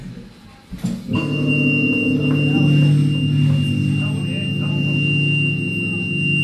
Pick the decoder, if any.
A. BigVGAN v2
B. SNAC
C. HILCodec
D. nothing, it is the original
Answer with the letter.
D